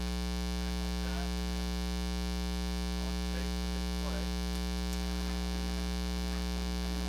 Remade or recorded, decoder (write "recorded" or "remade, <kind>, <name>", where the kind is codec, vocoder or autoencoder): recorded